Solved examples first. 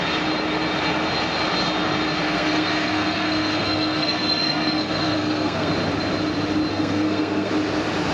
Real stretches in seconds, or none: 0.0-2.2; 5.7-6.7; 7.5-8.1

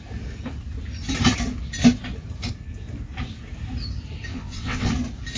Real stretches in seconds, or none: 0.0-4.3; 4.9-5.4